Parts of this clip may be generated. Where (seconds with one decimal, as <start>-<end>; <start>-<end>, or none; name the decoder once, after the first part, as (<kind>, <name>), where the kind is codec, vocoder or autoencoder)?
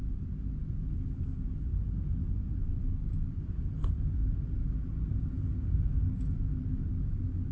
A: none